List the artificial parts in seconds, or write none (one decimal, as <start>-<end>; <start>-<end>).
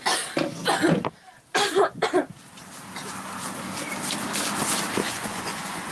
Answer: 5.0-5.9